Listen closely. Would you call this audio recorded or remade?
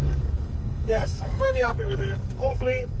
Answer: remade